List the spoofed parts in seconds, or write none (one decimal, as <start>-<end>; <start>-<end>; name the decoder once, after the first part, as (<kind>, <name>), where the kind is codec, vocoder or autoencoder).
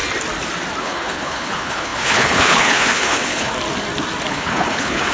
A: 0.8-3.5 (codec, HILCodec); 4.3-5.1